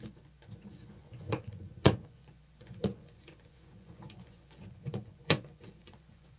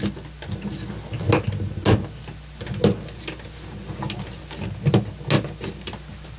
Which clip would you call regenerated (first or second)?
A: first